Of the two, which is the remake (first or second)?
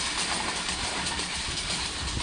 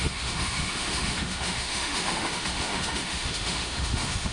second